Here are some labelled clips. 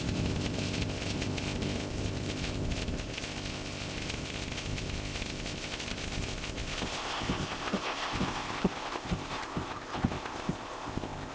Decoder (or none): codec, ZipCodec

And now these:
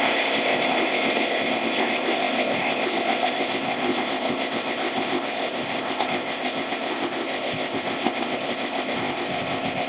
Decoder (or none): codec, ZipCodec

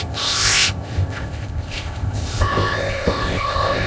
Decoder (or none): codec, ZipCodec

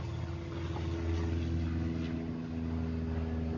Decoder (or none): none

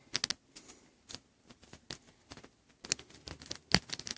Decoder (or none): none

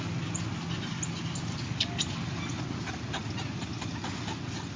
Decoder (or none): none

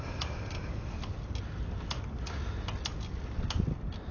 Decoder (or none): none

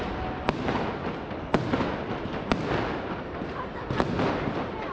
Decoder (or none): none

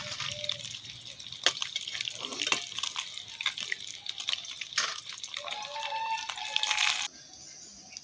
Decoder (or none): none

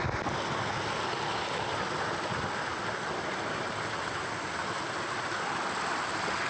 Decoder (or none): none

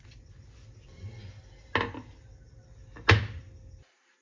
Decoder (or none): none